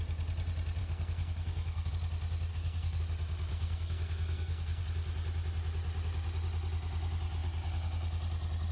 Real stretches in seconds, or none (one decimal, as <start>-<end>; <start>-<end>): 0.0-0.8; 1.9-2.5; 3.0-3.5; 4.8-8.7